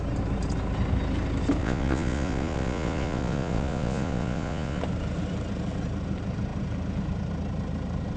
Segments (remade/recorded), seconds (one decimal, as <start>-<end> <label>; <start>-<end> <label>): 0.0-1.6 recorded; 1.6-4.8 remade; 4.8-8.2 recorded